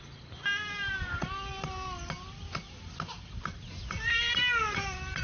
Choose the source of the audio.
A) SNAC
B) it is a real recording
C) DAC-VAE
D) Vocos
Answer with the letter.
B